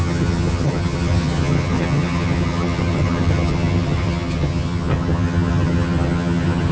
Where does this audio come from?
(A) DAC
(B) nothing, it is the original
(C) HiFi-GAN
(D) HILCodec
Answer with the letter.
C